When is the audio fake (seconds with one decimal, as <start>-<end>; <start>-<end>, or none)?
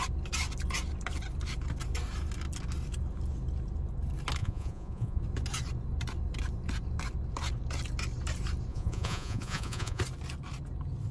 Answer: 4.4-5.2; 8.7-10.0